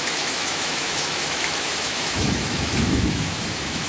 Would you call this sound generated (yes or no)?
yes